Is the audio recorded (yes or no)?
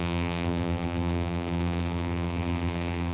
no